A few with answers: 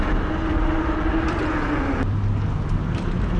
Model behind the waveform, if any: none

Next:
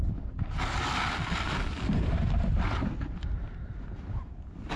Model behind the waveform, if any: none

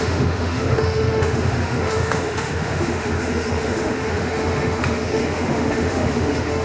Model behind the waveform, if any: autoencoder, DAC-VAE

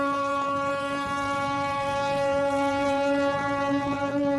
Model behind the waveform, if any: vocoder, BigVGAN v2